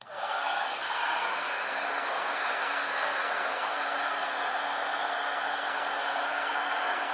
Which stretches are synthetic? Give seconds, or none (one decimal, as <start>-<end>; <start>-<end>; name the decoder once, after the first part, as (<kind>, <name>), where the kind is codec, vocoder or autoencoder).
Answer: 0.0-7.1 (codec, SNAC)